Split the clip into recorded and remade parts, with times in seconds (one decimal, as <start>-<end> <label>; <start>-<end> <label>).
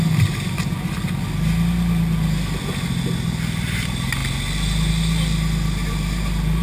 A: 0.0-6.6 recorded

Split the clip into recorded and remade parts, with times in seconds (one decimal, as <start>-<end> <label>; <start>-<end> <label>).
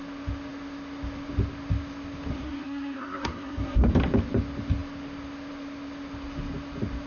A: 0.0-2.3 recorded; 2.3-3.9 remade; 3.9-7.1 recorded